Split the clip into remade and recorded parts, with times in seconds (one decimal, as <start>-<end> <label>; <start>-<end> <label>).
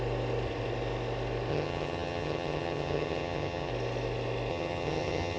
0.0-1.5 recorded; 1.5-3.7 remade; 3.7-4.5 recorded; 4.5-5.4 remade